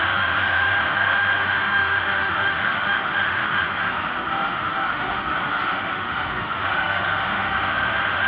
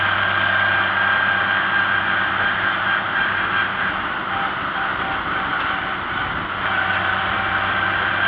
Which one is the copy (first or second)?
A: first